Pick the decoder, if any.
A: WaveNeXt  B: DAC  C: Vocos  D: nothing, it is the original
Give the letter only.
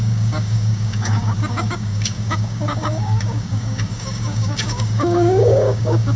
B